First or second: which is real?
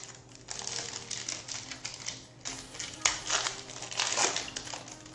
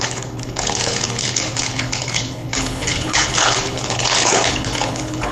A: first